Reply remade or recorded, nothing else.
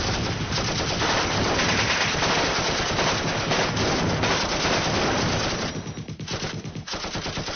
recorded